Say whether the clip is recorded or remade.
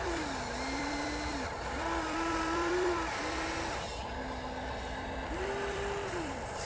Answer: remade